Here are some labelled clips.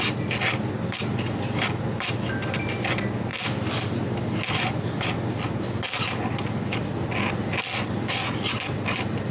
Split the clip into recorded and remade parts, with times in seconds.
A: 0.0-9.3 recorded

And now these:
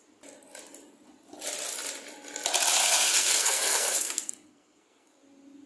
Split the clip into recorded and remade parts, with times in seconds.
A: 0.0-2.8 recorded; 2.8-5.2 remade; 5.2-5.7 recorded

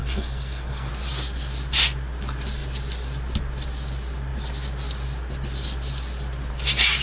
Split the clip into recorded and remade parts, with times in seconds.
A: 0.0-0.9 remade; 0.9-7.0 recorded